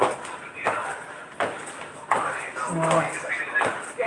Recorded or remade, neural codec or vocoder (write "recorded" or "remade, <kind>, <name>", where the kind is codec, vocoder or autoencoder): recorded